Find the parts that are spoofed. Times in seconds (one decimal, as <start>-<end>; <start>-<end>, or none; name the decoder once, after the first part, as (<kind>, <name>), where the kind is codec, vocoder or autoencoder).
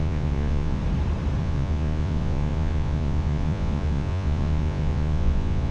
0.0-0.8 (vocoder, Vocos); 1.4-5.7